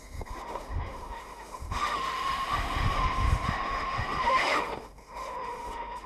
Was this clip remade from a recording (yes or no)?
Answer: yes